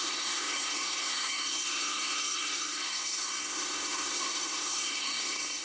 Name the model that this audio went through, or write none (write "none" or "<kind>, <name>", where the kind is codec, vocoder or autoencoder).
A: codec, SNAC